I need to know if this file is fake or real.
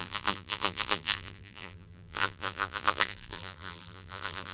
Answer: fake